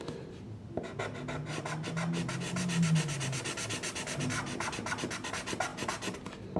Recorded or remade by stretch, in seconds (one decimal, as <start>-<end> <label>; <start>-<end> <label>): 0.0-6.6 recorded